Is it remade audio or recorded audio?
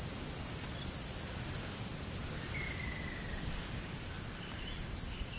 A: recorded